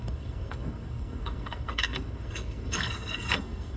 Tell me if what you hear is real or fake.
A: fake